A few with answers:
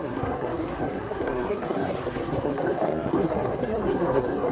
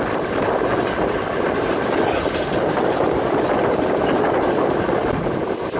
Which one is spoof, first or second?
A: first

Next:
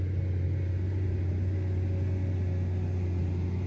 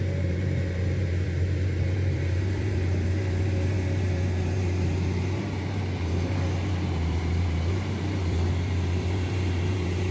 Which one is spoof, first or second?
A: second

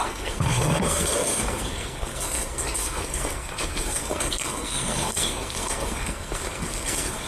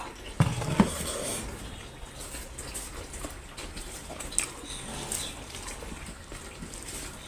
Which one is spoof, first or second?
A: first